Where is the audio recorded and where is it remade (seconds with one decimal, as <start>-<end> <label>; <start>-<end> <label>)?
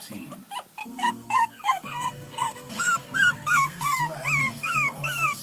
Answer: 0.0-0.8 recorded; 0.8-4.0 remade; 4.0-4.4 recorded; 4.4-5.4 remade